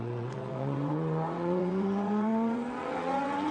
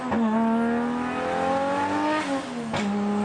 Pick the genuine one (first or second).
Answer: second